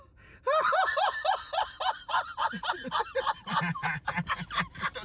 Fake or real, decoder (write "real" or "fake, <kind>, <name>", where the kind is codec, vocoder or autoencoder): real